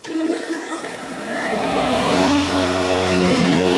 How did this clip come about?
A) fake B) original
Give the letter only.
A